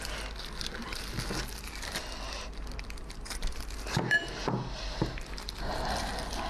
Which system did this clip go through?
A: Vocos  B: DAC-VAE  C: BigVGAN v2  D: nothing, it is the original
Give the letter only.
D